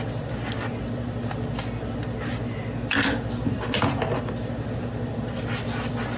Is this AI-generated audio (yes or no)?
no